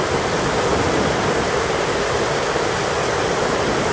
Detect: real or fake real